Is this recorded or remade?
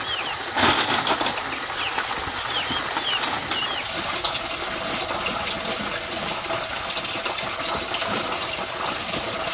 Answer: recorded